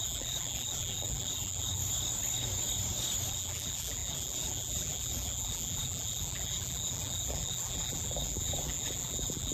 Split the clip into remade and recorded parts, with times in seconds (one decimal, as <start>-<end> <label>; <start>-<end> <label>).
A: 0.0-1.8 remade; 1.8-3.3 recorded; 3.3-9.5 remade